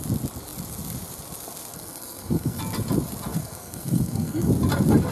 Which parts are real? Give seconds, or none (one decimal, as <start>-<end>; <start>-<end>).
0.0-1.7; 2.6-3.3; 4.5-5.1